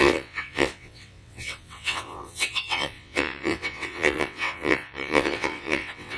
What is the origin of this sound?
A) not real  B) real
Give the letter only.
A